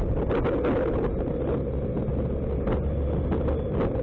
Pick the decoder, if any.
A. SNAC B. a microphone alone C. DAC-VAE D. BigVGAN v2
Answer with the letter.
B